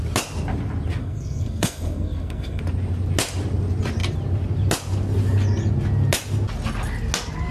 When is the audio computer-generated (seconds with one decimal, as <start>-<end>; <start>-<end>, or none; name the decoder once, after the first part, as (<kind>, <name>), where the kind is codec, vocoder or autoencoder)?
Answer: 1.0-2.6 (codec, SNAC)